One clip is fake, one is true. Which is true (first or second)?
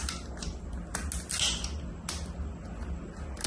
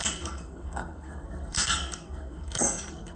first